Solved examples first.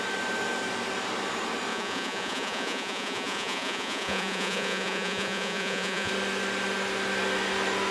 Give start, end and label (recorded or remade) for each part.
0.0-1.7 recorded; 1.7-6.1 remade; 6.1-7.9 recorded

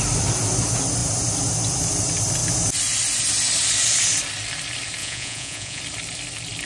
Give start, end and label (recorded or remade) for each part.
0.0-5.0 recorded; 5.0-5.8 remade; 5.8-6.7 recorded

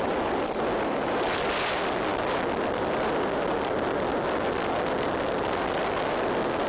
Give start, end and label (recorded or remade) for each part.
0.0-6.7 recorded

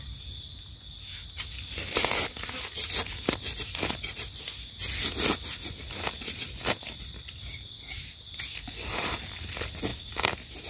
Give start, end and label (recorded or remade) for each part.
0.0-10.7 recorded

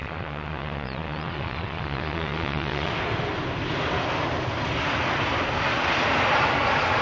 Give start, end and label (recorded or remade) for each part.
0.0-2.9 remade; 2.9-7.0 recorded

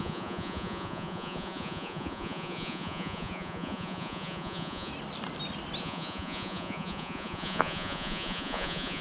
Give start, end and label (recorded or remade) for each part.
0.0-4.9 remade; 4.9-5.8 recorded; 5.8-9.0 remade